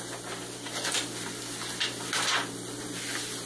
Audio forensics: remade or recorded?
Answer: recorded